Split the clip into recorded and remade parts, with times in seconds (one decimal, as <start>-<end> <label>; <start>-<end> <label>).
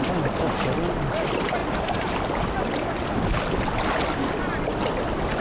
0.0-5.4 recorded